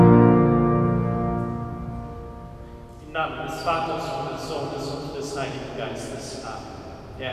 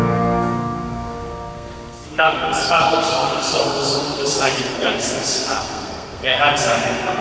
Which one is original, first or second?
first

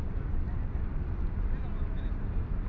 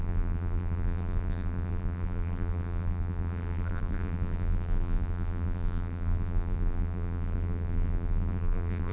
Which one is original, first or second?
first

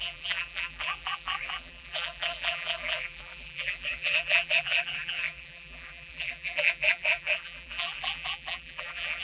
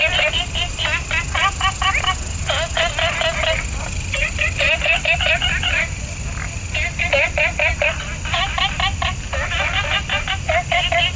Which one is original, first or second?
second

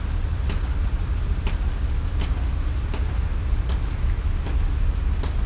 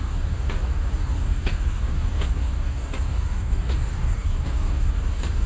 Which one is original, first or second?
first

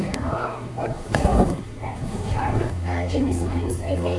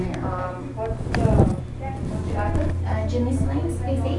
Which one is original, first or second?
second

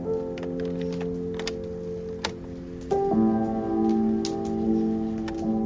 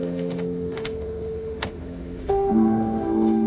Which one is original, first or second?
first